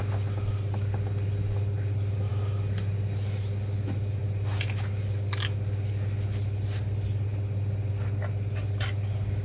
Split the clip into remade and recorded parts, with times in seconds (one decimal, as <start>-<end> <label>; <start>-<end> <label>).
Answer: 0.0-9.4 recorded